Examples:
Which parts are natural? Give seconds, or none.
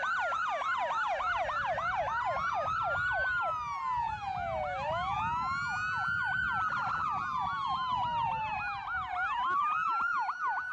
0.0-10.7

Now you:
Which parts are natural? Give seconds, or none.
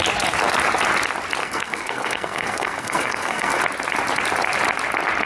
0.0-1.4; 3.6-5.3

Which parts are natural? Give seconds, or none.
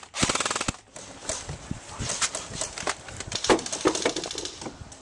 0.0-5.0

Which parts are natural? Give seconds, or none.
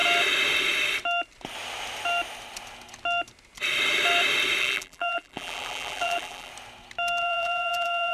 0.0-4.6; 6.5-7.2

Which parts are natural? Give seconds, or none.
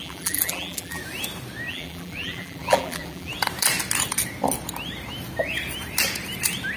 1.0-1.7; 3.3-6.8